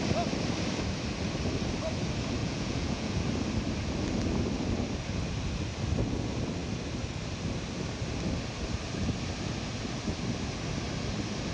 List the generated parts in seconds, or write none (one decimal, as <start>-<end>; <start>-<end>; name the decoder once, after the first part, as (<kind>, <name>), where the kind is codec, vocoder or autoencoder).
2.4-3.2 (vocoder, Vocos)